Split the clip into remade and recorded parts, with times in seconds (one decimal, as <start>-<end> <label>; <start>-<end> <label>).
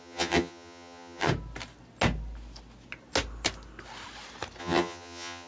0.0-1.3 remade; 1.3-4.6 recorded; 4.6-5.5 remade